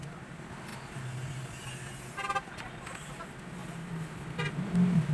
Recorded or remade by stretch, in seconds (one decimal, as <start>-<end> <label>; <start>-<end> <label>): 0.0-5.1 recorded